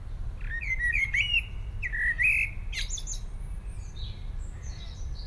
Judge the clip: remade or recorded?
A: recorded